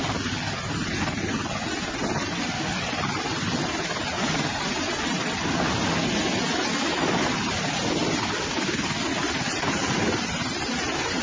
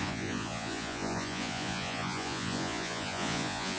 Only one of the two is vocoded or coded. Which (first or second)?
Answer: second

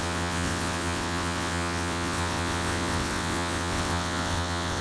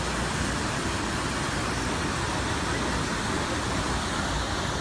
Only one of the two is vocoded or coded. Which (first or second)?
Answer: first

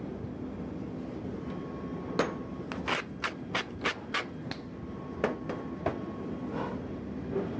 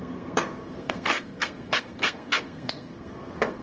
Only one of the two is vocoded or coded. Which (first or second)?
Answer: second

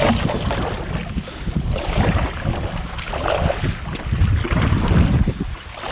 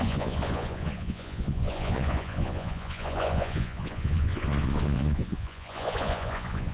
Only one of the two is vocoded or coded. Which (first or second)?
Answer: second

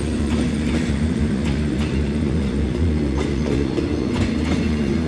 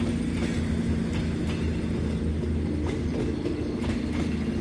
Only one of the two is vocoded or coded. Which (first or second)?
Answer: first